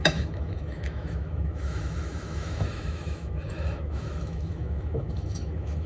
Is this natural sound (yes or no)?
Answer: no